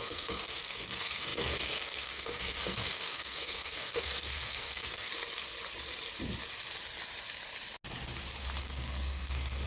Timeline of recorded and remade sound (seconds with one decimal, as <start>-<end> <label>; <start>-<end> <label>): 0.0-5.1 remade; 5.1-8.6 recorded; 8.6-9.7 remade